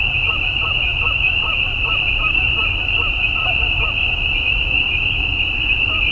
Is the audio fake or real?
fake